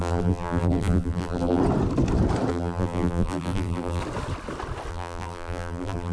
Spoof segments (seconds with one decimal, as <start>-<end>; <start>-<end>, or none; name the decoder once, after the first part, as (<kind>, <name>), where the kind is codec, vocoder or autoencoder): 0.0-1.6 (vocoder, BigVGAN v2); 2.5-4.0; 4.9-6.1